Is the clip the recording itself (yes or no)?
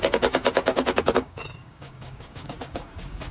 no